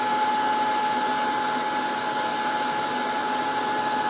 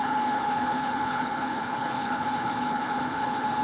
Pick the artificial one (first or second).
second